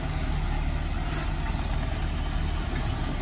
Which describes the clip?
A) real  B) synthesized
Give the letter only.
A